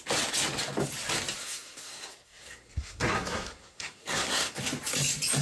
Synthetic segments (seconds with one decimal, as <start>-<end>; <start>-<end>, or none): 1.4-4.6